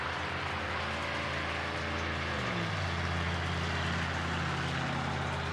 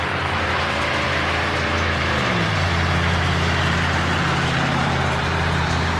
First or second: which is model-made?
second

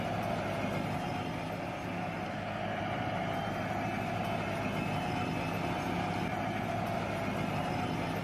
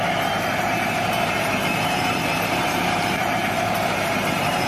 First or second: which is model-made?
second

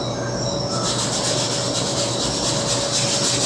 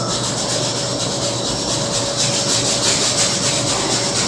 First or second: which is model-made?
second